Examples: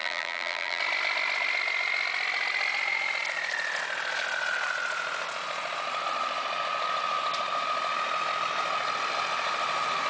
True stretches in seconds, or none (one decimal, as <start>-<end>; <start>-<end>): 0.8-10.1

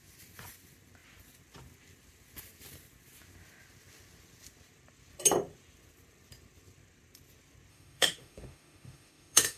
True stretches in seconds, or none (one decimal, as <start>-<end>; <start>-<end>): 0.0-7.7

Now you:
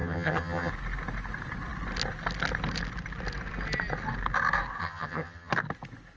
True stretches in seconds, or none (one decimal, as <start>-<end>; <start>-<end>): 0.7-4.8; 5.5-6.2

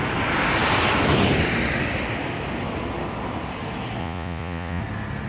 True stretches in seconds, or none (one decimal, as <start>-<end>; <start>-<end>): 0.0-4.0; 4.8-5.3

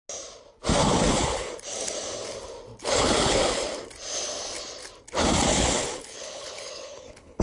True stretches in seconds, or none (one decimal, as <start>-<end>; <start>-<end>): 0.0-0.8; 1.5-2.8; 3.7-5.5